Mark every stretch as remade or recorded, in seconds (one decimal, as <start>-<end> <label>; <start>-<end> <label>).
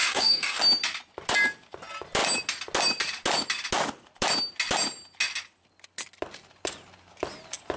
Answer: 0.0-0.6 remade; 0.6-7.8 recorded